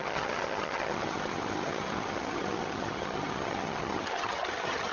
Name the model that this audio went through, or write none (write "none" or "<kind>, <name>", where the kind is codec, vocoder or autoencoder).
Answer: vocoder, HiFi-GAN